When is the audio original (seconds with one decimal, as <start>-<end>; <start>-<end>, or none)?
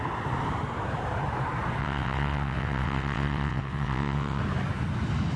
0.0-1.8; 4.4-5.4